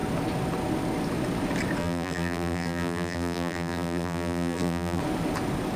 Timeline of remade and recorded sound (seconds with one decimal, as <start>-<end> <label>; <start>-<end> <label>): 0.0-1.8 recorded; 1.8-5.0 remade; 5.0-5.8 recorded